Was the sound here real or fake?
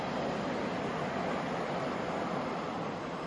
real